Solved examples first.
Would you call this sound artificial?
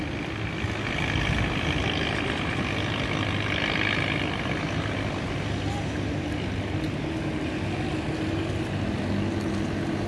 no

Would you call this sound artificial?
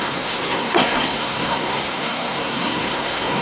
yes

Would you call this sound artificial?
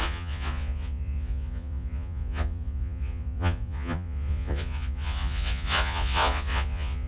yes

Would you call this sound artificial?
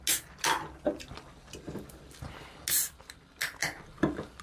no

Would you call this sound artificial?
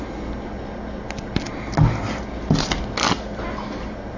no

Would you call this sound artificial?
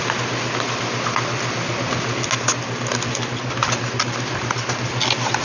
no